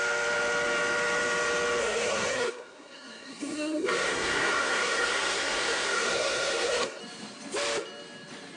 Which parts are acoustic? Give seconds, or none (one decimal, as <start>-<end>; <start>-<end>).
0.0-1.8; 7.0-8.6